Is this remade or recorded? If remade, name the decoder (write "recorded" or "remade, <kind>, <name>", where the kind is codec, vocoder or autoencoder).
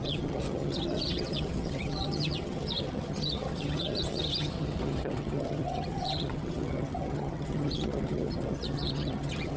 remade, vocoder, HiFi-GAN